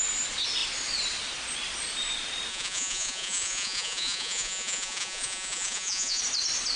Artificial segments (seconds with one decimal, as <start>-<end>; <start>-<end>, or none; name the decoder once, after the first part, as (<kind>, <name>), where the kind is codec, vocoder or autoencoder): 2.5-6.2 (vocoder, Vocos)